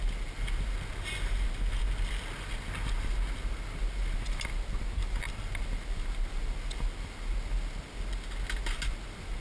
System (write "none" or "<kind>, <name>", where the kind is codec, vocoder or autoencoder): none